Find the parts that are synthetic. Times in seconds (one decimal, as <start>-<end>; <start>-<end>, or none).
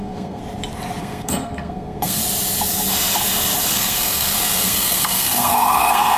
0.0-0.4; 1.0-2.2; 3.7-6.2